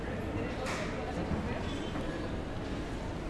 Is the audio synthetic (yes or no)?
no